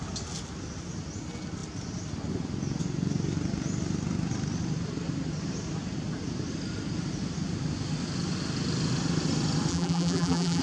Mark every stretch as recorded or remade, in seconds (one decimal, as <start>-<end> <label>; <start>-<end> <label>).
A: 0.0-9.7 recorded; 9.7-10.6 remade